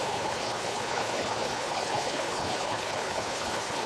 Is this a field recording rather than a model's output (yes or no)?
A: no